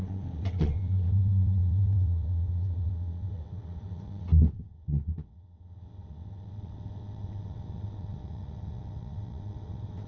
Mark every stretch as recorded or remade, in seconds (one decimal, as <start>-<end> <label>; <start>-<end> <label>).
0.0-10.1 remade